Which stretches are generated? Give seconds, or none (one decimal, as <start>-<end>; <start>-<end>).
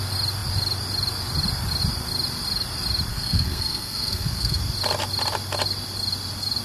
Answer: 3.1-4.6